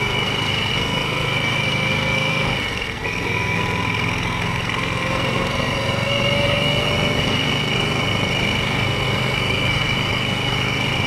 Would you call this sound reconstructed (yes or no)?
yes